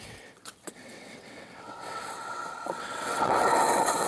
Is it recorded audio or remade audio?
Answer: remade